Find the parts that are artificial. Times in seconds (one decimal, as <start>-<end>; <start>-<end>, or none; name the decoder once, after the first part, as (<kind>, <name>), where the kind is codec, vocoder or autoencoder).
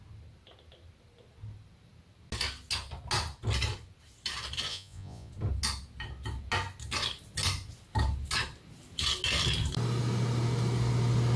4.7-5.3 (vocoder, Vocos)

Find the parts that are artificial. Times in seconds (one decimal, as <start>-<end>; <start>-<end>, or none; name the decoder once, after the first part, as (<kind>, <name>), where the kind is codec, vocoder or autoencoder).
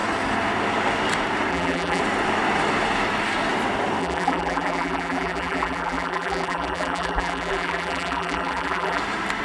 1.5-2.0 (vocoder, BigVGAN v2); 4.0-9.0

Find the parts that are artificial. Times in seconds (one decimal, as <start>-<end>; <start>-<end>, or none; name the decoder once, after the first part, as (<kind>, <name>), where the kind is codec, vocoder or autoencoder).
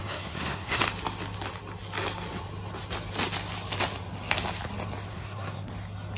0.0-0.8 (codec, SNAC); 5.1-5.7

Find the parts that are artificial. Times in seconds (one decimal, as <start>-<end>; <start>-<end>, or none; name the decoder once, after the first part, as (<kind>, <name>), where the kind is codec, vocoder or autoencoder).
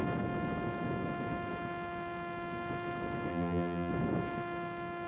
3.3-3.9 (vocoder, BigVGAN v2)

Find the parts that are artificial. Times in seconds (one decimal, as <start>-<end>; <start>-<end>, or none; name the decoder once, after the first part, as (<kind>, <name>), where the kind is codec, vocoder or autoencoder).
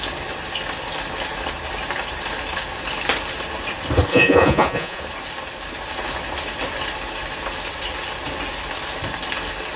4.1-5.0 (vocoder, Vocos)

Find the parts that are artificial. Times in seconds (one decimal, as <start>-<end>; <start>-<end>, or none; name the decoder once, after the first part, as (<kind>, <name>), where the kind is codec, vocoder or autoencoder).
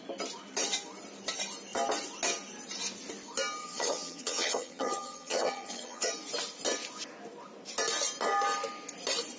3.6-6.1 (vocoder, HiFi-GAN)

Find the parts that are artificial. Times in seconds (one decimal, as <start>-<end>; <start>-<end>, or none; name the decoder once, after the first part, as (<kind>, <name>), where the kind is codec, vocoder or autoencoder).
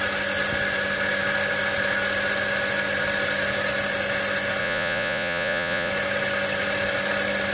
4.6-5.9 (vocoder, Vocos)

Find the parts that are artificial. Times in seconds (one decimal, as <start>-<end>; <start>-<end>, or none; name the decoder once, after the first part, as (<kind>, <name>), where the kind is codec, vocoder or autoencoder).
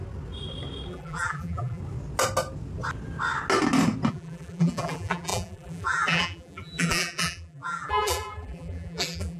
0.9-1.8 (vocoder, BigVGAN v2); 4.1-9.4